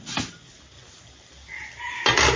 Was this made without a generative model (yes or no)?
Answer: yes